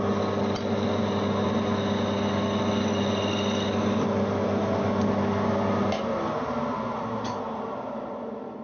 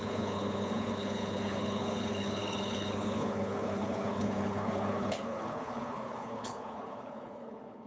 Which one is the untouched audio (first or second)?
first